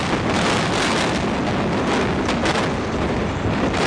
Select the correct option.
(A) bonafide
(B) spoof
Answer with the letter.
A